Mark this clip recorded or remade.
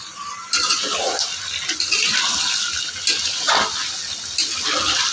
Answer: recorded